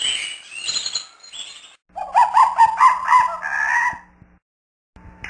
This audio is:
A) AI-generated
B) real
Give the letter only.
B